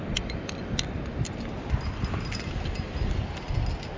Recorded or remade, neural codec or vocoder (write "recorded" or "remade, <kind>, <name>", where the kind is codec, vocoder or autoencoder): recorded